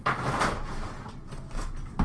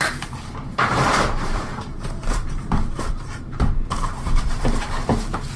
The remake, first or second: second